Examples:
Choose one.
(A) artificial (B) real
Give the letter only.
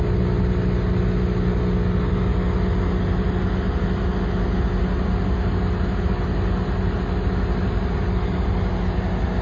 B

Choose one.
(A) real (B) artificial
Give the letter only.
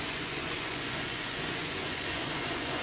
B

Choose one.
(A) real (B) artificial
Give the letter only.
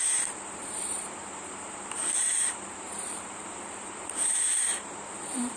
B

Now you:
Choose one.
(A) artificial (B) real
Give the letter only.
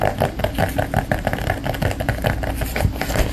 B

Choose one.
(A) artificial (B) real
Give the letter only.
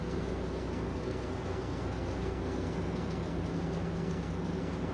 A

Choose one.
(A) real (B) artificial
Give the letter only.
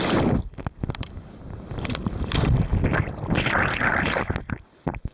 A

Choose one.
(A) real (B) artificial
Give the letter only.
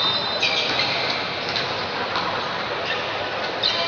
A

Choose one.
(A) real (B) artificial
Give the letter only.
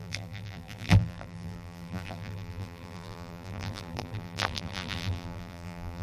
B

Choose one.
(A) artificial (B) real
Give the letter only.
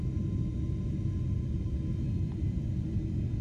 B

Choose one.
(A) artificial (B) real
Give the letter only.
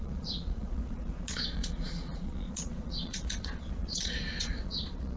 A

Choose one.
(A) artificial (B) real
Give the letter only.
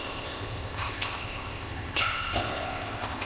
A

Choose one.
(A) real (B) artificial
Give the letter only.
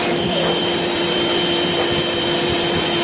B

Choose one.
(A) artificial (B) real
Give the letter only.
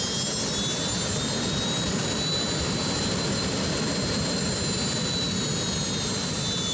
B